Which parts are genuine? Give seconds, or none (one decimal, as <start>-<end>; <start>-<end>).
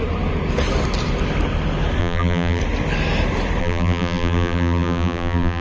0.0-2.0; 2.6-3.6